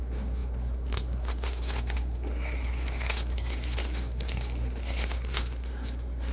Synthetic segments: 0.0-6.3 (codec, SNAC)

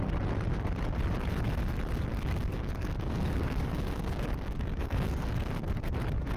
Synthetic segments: 2.1-5.5 (codec, DAC)